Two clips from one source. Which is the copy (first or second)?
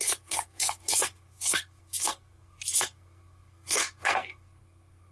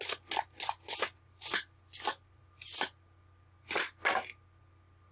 first